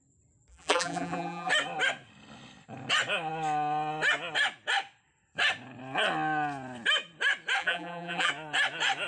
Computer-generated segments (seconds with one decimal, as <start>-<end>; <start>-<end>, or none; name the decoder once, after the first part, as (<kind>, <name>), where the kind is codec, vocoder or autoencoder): 0.5-1.5 (vocoder, BigVGAN v2); 7.6-8.3